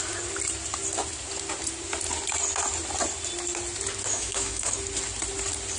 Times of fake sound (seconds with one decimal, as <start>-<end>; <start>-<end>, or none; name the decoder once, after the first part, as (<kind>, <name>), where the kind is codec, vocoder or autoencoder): 4.1-4.7 (autoencoder, DAC-VAE)